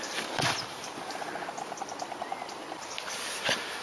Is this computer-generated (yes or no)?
no